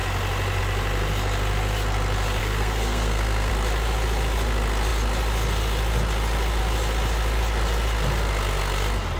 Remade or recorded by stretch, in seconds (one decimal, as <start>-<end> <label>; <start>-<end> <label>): 0.0-2.4 recorded; 2.4-3.5 remade; 3.5-9.2 recorded